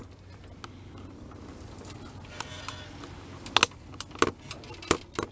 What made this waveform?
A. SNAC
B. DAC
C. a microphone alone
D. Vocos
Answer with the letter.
C